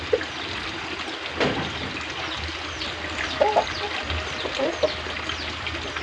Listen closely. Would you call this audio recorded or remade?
recorded